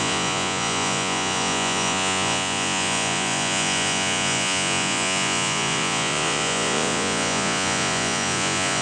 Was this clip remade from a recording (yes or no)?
yes